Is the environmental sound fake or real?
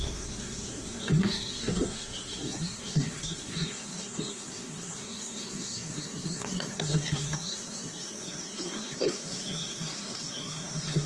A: fake